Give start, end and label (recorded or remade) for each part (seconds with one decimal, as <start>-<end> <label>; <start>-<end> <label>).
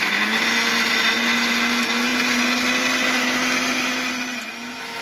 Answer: 0.0-5.0 recorded